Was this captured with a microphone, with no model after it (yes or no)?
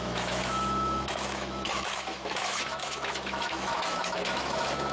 no